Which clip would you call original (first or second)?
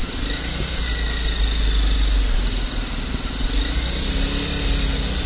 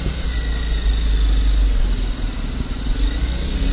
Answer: second